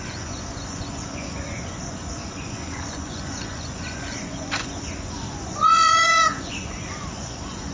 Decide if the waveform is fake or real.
fake